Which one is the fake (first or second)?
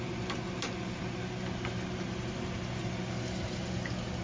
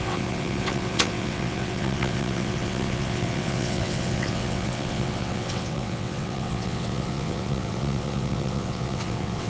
second